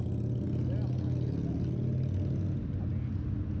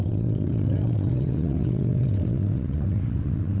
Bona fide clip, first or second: first